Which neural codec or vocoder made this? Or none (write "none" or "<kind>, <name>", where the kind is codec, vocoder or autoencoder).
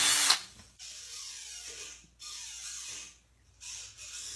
none